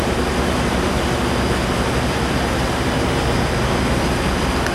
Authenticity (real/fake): real